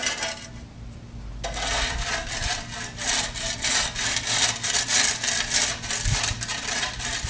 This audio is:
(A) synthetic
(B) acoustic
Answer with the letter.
B